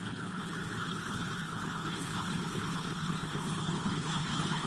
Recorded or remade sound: remade